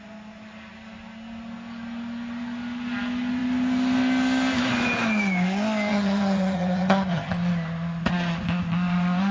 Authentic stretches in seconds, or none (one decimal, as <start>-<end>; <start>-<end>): 0.0-5.9; 7.3-9.3